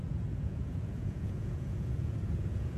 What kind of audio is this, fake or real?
fake